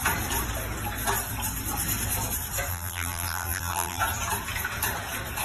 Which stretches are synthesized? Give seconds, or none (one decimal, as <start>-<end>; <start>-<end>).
2.7-4.0